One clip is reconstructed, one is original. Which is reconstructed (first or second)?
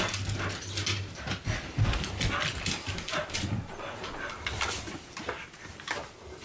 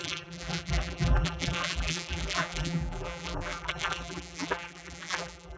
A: second